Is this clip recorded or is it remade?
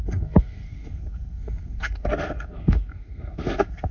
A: remade